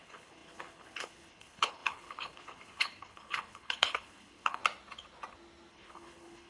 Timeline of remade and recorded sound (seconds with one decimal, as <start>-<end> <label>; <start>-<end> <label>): 0.0-4.6 remade; 4.6-5.7 recorded; 5.7-6.5 remade